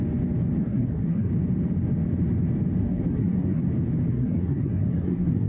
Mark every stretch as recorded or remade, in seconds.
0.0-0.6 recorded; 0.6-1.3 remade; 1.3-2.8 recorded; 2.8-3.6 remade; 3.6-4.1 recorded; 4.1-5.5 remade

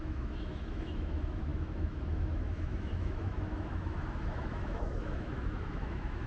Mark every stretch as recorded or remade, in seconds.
0.0-6.3 remade

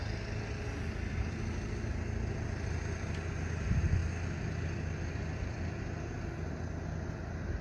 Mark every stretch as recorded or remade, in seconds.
0.0-7.6 recorded

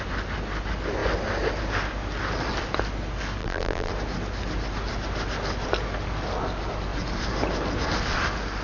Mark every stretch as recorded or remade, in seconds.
0.0-3.4 recorded; 3.4-3.9 remade; 3.9-8.6 recorded

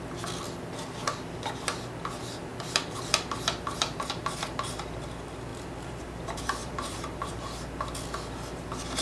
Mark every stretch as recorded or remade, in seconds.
0.0-2.5 recorded; 2.5-4.1 remade; 4.1-5.5 recorded; 5.5-6.0 remade; 6.0-6.6 recorded; 6.6-7.3 remade; 7.3-9.0 recorded

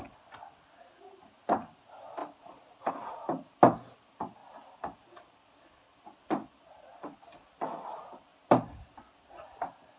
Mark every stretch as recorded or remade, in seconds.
0.0-4.4 recorded; 4.4-7.6 remade; 7.6-10.0 recorded